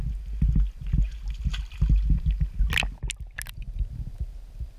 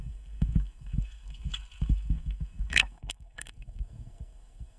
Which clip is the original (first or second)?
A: first